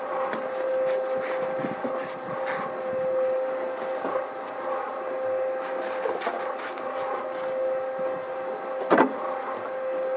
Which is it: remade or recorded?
recorded